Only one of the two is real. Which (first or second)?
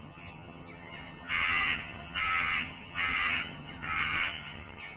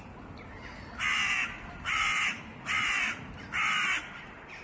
second